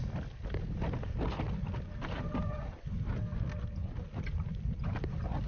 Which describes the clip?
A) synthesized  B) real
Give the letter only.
B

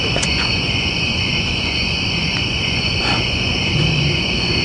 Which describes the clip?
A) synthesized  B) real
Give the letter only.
A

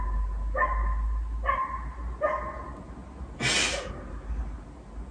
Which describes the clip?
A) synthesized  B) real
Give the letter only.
B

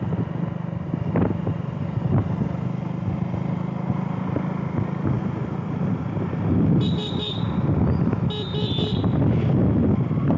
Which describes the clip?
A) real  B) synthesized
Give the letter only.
A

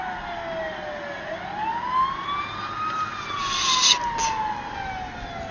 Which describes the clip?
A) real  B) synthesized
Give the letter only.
A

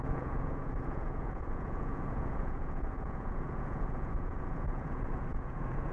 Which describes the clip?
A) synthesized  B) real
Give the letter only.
A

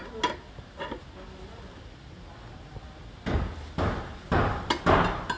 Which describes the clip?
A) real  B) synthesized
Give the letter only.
A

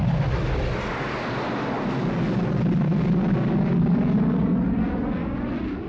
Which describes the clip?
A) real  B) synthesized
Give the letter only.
A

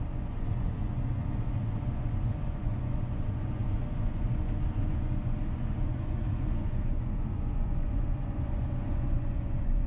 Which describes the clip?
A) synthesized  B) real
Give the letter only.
A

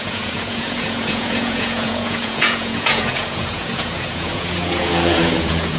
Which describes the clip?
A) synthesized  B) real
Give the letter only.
A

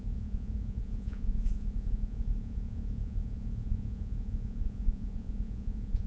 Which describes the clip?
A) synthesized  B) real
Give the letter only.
A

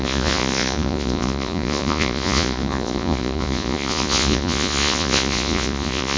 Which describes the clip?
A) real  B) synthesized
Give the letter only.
B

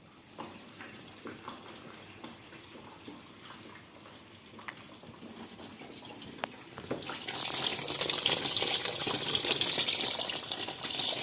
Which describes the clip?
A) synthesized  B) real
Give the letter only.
B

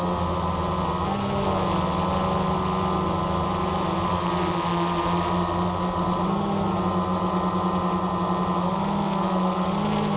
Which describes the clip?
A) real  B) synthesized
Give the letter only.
A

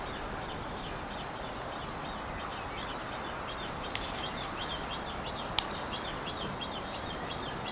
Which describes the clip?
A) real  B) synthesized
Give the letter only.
A